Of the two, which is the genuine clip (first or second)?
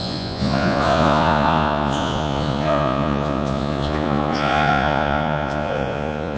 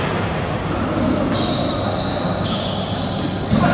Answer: second